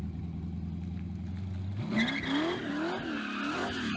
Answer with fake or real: real